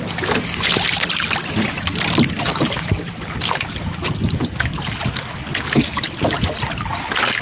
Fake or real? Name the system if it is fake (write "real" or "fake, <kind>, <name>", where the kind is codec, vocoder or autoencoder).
real